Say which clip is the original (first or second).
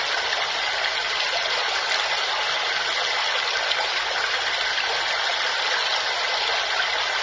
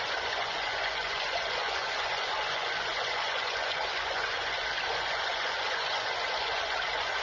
first